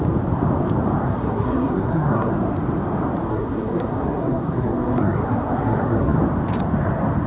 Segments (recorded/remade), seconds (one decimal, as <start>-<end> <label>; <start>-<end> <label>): 0.0-1.0 recorded; 1.0-2.3 remade; 2.3-3.3 recorded; 3.3-6.2 remade; 6.2-7.3 recorded

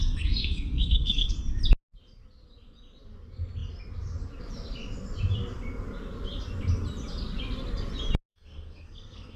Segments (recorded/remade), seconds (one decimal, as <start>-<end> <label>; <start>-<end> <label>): 0.0-1.3 remade; 1.3-8.3 recorded; 8.3-9.4 remade

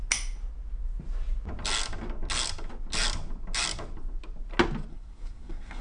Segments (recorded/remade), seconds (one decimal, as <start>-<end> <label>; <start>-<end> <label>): 0.0-4.9 recorded; 4.9-5.8 remade

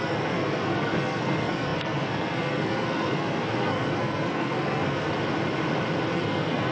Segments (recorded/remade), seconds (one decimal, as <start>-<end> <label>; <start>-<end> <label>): 0.0-5.1 remade; 5.1-6.1 recorded; 6.1-6.7 remade